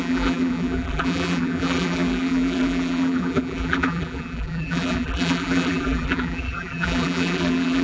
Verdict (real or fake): fake